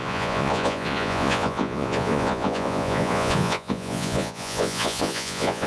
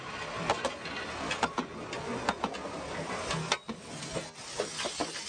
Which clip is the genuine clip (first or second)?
second